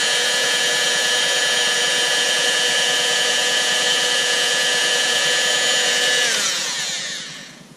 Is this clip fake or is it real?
fake